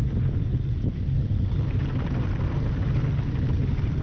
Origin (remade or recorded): recorded